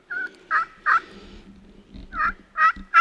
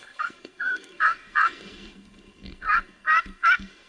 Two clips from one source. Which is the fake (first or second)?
second